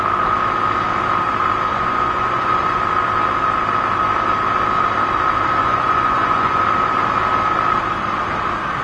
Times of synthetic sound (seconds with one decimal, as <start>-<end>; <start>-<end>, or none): 1.7-2.8; 5.6-6.6